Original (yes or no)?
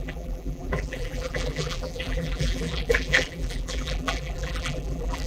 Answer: no